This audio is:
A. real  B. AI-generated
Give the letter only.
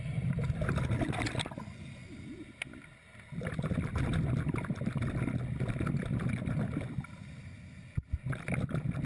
A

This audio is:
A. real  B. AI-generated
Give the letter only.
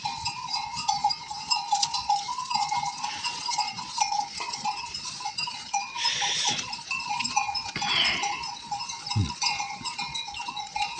B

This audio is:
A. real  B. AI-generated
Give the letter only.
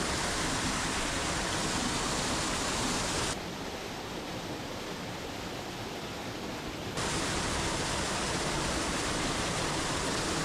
A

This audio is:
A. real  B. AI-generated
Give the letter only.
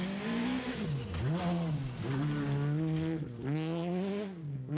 A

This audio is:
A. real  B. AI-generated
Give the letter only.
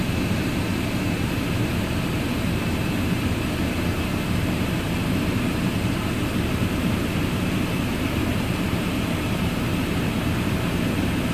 B